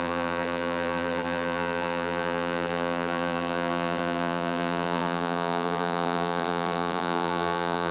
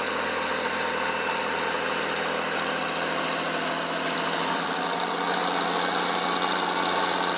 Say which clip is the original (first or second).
second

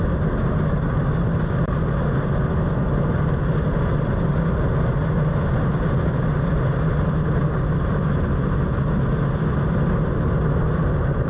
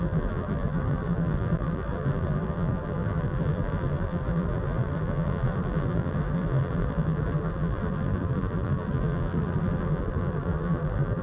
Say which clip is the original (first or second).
first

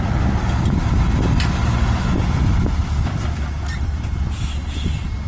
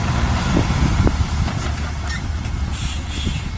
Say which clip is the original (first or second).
first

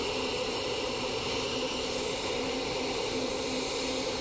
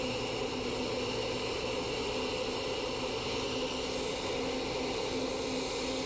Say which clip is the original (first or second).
second